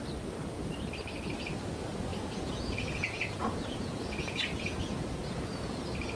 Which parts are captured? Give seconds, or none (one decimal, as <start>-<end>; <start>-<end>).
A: 0.0-2.1; 5.8-6.2

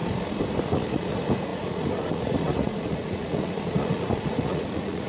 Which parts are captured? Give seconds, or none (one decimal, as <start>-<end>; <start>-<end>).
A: 0.0-0.6

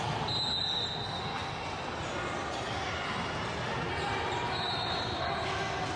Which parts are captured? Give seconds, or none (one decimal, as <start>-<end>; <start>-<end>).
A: 0.0-6.0

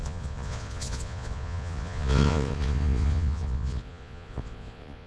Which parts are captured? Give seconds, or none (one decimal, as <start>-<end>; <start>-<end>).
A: none

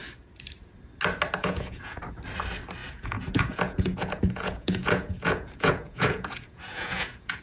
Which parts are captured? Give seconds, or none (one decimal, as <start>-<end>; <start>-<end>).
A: 0.0-1.4; 2.0-2.8

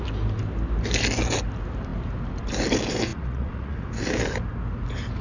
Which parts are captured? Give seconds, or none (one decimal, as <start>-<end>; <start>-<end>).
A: 0.0-3.1; 3.9-5.2

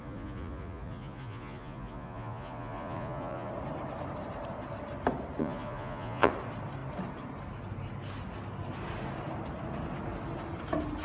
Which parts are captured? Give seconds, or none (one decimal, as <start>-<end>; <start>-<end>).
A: 3.5-5.4; 6.3-11.0